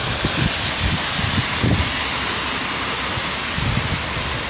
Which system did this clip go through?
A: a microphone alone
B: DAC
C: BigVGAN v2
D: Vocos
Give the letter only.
A